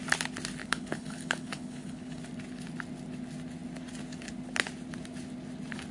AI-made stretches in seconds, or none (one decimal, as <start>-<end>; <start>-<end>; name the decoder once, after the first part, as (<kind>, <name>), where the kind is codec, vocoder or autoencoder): 0.6-2.2 (codec, HILCodec)